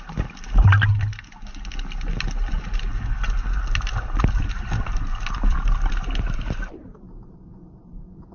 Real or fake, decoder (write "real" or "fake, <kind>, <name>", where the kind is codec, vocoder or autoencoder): real